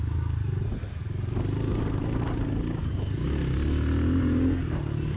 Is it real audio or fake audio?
real